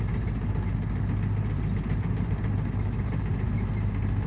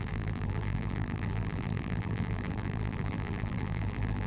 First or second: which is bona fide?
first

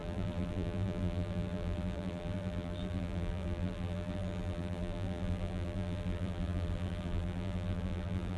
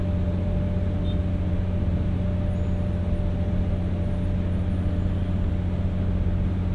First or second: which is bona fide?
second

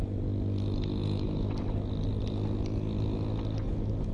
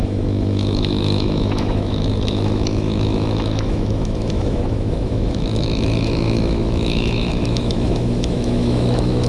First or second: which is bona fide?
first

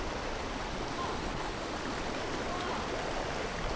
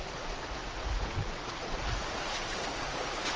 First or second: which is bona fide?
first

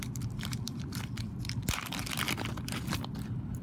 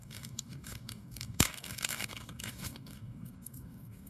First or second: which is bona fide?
first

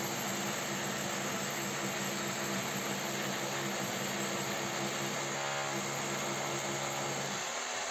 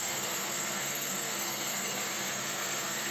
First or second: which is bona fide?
first